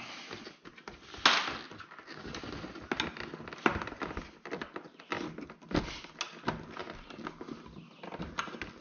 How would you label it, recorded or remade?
recorded